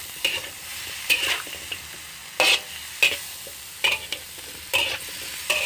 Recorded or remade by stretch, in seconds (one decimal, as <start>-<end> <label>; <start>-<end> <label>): 0.0-0.7 recorded; 0.7-1.3 remade; 1.3-5.7 recorded